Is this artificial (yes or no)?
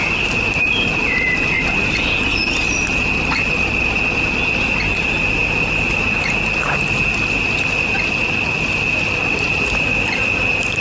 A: no